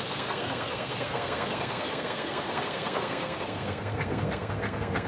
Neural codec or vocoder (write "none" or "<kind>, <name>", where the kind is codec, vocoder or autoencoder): codec, SNAC